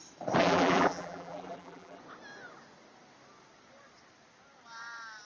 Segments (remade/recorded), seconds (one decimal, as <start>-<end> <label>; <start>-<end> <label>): 0.0-0.4 recorded; 0.4-2.0 remade; 2.0-5.2 recorded